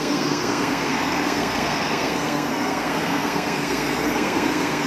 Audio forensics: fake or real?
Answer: fake